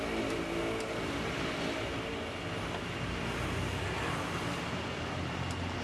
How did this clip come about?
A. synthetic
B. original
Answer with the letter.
B